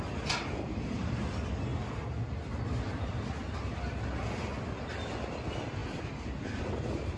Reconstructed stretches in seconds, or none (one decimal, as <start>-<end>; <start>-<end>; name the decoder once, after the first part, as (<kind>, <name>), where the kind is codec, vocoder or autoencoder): none